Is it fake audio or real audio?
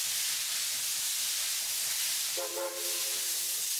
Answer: real